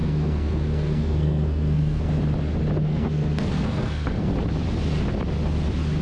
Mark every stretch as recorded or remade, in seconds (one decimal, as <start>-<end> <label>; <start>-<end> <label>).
0.0-2.1 remade; 2.1-2.8 recorded; 2.8-4.3 remade; 4.3-6.0 recorded